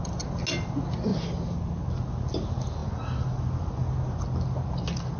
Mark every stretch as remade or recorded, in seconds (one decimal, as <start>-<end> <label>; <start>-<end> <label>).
0.0-5.2 recorded

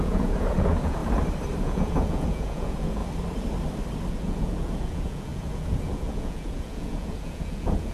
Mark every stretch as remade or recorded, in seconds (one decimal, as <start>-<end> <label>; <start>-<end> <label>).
0.0-1.0 remade; 1.0-1.6 recorded; 1.6-3.0 remade; 3.0-4.1 recorded; 4.1-7.9 remade

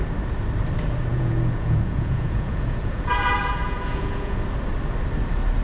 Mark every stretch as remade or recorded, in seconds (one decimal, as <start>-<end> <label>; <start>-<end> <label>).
0.0-1.1 recorded; 1.1-4.4 remade; 4.4-5.6 recorded

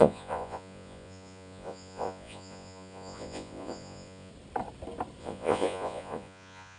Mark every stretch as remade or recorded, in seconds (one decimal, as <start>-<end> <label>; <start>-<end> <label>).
0.0-4.3 remade; 4.3-5.2 recorded; 5.2-6.8 remade

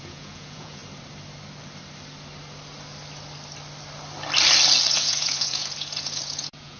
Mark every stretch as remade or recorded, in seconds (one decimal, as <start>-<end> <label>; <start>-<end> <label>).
0.0-0.8 remade; 0.8-4.9 recorded; 4.9-6.8 remade

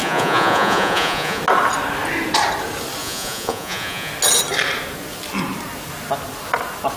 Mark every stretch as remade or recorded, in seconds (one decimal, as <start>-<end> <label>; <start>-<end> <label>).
0.0-1.4 remade; 1.4-3.0 recorded; 3.0-4.1 remade; 4.1-7.0 recorded

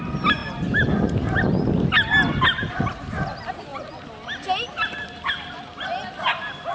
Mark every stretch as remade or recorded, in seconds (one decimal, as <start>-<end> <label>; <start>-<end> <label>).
0.0-6.7 recorded